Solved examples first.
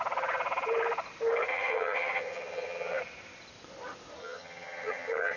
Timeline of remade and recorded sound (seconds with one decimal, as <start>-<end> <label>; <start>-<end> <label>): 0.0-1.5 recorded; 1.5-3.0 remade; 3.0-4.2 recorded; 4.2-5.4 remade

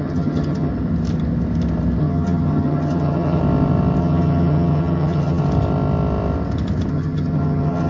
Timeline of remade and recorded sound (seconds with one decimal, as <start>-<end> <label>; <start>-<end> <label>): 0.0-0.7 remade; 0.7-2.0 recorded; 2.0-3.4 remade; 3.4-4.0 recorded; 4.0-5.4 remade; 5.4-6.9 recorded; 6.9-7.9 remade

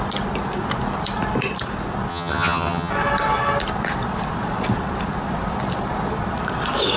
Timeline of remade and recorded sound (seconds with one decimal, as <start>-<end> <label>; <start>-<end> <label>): 0.0-2.1 recorded; 2.1-2.9 remade; 2.9-7.0 recorded